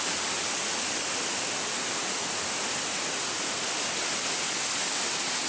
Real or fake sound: real